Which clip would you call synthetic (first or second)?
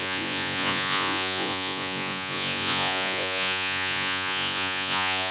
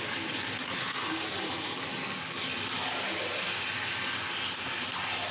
first